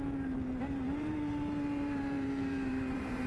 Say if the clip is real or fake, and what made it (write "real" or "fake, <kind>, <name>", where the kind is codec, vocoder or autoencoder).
fake, vocoder, BigVGAN v2